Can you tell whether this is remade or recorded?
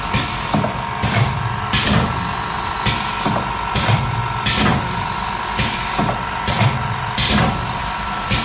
remade